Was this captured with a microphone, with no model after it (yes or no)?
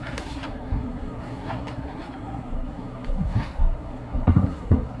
no